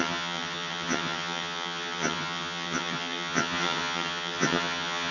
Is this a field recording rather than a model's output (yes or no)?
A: no